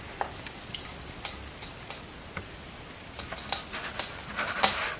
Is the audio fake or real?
real